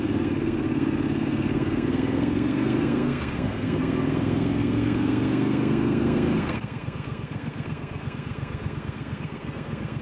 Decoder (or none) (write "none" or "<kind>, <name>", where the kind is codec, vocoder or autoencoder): codec, SNAC